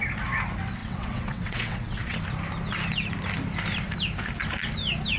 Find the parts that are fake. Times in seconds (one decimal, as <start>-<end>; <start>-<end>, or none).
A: 0.8-2.2